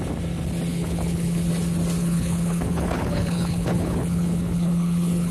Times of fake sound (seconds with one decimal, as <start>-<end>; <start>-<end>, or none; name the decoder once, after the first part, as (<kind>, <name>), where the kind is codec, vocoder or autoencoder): 0.7-1.5 (codec, HILCodec); 2.0-5.3